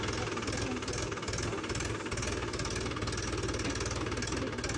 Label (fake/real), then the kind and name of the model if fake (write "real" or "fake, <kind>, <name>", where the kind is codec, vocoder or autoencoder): real